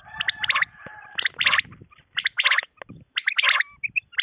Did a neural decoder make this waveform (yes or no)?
no